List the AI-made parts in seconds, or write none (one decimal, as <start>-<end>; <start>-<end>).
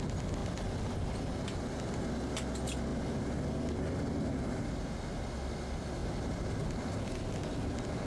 none